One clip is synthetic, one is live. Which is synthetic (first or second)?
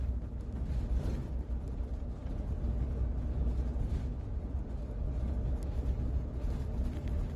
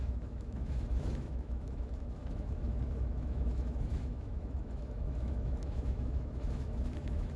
second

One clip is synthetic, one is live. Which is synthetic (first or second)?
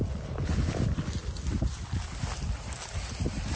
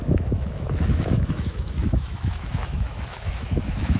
second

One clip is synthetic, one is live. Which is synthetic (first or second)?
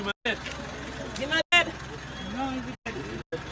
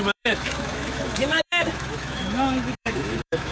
second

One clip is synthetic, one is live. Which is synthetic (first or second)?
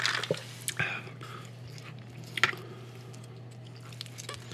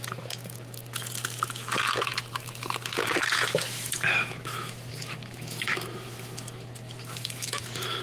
second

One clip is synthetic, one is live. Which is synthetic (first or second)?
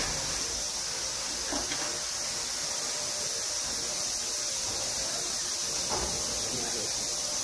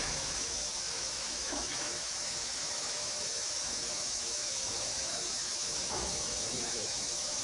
second